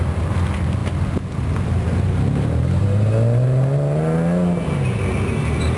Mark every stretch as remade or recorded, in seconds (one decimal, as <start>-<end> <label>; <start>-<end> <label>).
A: 0.0-5.8 recorded